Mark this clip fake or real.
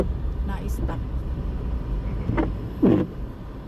real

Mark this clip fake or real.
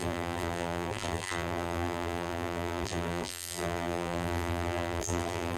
fake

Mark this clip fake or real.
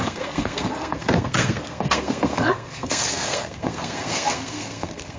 fake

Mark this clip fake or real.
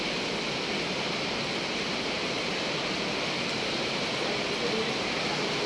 real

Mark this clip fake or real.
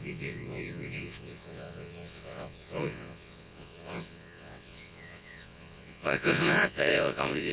fake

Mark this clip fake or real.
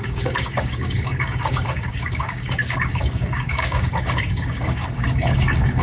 fake